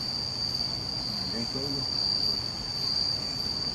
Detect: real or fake real